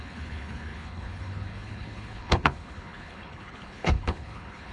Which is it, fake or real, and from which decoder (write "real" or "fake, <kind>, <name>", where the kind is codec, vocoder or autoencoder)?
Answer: fake, codec, HILCodec